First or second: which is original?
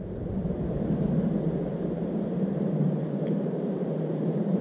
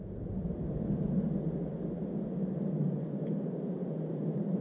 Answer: second